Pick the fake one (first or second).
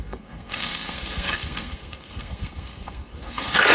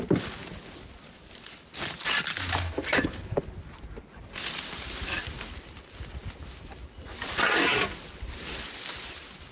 first